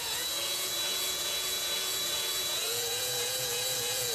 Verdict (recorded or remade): remade